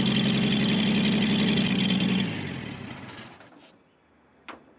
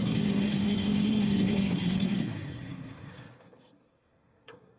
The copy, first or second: second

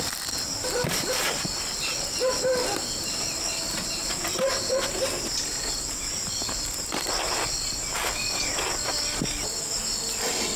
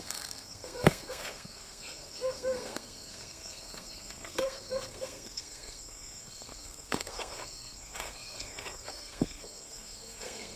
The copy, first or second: second